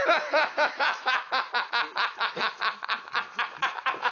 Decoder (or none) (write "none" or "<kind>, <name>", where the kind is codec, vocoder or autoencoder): autoencoder, DAC-VAE